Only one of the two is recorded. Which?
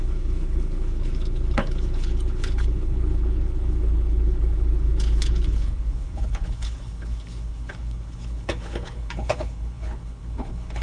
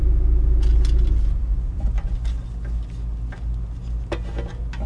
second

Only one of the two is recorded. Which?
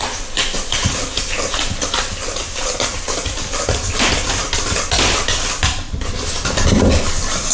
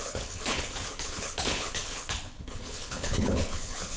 first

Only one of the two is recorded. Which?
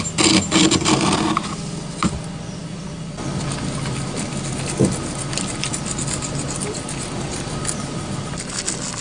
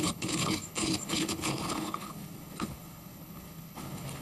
first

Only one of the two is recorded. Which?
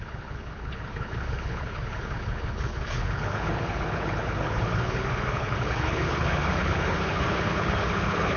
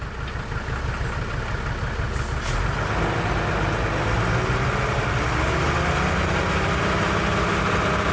second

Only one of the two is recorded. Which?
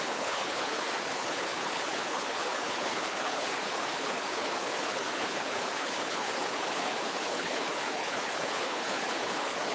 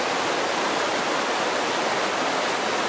second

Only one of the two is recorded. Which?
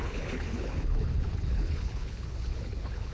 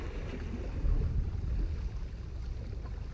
second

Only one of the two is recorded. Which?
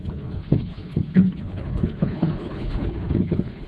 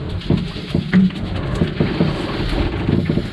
second